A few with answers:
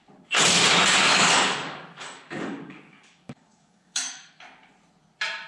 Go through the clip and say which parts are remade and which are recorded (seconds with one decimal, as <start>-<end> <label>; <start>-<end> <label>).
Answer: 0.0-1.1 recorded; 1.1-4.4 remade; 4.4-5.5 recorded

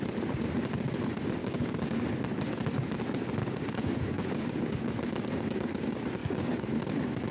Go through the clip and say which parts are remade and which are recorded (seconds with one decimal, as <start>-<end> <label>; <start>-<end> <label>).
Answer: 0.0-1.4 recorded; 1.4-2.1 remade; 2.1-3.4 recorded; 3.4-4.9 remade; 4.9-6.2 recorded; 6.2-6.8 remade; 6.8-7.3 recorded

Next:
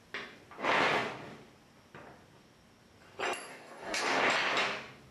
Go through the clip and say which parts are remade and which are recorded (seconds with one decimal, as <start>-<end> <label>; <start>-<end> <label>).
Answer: 0.0-3.5 recorded; 3.5-4.0 remade; 4.0-5.1 recorded

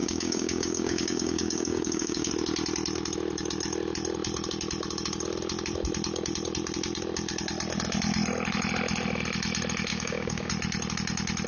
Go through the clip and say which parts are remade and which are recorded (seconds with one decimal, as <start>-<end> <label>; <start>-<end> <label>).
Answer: 0.0-2.3 remade; 2.3-9.9 recorded; 9.9-10.5 remade; 10.5-11.5 recorded

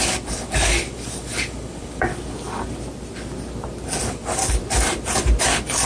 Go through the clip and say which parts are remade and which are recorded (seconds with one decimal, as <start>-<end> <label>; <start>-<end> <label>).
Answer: 0.0-2.1 remade; 2.1-4.0 recorded; 4.0-4.4 remade; 4.4-5.4 recorded; 5.4-5.9 remade

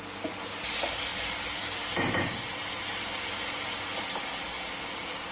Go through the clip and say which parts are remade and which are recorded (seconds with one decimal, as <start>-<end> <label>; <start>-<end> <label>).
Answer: 0.0-5.3 recorded